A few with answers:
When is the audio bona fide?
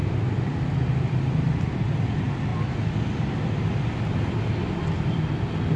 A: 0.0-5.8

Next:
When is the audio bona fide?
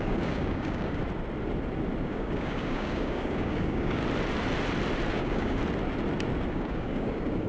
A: 1.0-2.0; 4.0-5.1; 5.6-6.5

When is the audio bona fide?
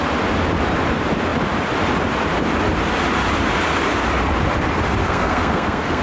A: 0.0-5.0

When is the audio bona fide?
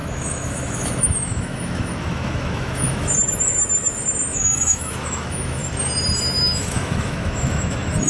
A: 5.6-6.2